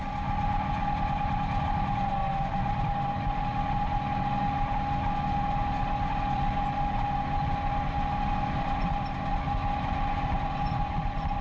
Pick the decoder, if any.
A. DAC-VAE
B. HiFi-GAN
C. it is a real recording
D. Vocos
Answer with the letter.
C